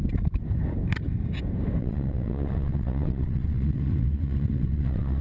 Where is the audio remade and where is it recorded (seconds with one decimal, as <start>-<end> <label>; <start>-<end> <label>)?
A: 0.0-1.8 recorded; 1.8-5.2 remade